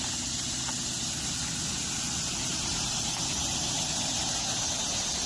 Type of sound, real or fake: real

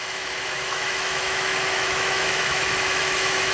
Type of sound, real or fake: fake